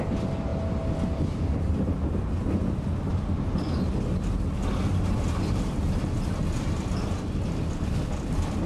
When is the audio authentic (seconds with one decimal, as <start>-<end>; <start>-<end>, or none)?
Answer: 0.0-8.7